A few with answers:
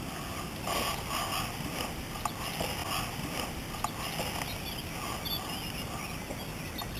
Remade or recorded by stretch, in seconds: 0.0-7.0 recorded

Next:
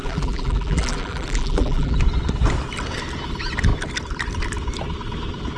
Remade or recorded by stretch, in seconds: 0.0-2.0 remade; 2.0-5.6 recorded

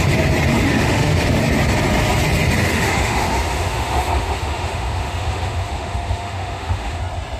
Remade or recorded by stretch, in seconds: 0.0-0.5 recorded; 0.5-1.4 remade; 1.4-2.6 recorded; 2.6-7.0 remade; 7.0-7.4 recorded

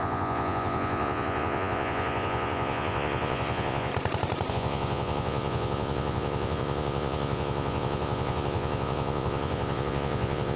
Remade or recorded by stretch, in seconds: 0.0-3.9 remade; 3.9-4.5 recorded; 4.5-10.6 remade

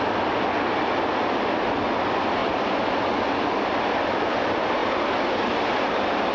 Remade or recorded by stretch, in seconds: 0.0-4.8 recorded; 4.8-5.4 remade; 5.4-6.3 recorded

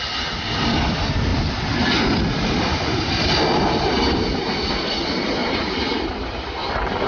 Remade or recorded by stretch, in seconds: 0.0-5.4 recorded; 5.4-7.1 remade